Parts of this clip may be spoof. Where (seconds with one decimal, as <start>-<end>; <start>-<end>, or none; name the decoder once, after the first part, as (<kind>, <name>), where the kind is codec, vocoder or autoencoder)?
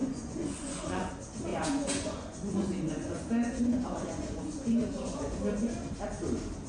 0.0-1.1 (vocoder, Vocos); 1.5-5.4